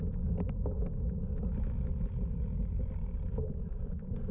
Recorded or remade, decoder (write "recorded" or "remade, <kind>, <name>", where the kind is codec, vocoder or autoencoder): recorded